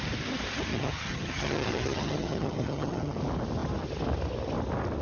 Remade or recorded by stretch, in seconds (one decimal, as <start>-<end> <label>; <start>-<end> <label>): 0.0-0.7 recorded; 0.7-3.2 remade; 3.2-5.0 recorded